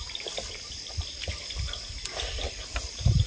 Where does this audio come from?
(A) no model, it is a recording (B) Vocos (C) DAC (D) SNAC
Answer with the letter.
A